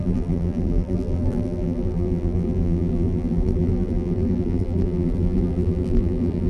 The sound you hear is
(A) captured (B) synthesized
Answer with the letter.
B